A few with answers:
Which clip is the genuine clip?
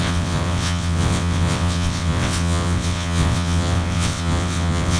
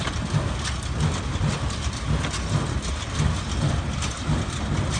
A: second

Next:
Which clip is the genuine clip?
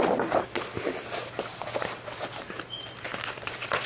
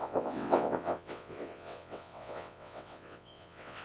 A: first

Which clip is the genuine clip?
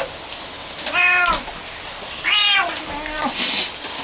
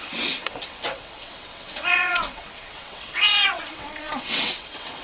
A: first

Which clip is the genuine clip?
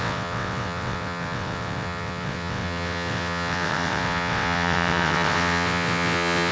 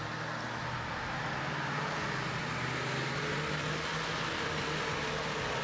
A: second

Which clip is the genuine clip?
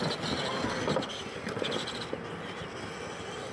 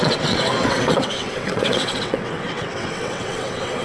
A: first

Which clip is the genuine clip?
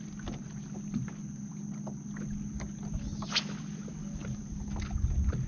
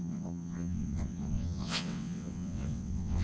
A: first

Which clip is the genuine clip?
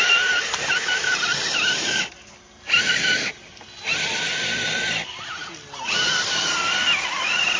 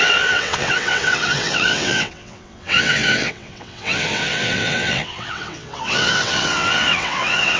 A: first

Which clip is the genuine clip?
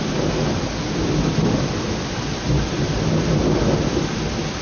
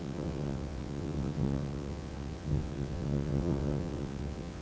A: first